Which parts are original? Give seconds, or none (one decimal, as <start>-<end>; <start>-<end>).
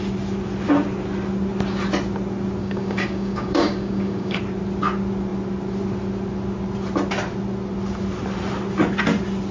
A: 0.0-2.6; 4.4-9.5